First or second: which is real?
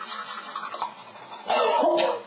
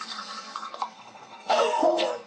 first